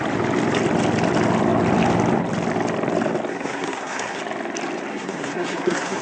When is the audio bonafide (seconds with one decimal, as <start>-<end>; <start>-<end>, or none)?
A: 0.0-3.3; 4.2-4.9